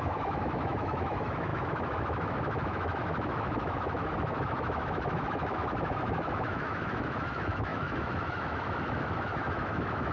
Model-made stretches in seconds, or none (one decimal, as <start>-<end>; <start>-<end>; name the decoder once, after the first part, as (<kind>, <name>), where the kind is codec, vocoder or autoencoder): 0.0-10.1 (autoencoder, DAC-VAE)